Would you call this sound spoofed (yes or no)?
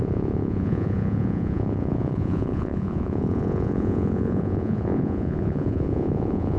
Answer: yes